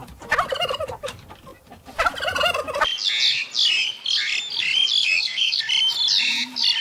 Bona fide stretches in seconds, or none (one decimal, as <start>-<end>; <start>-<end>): 0.0-5.0; 5.6-6.8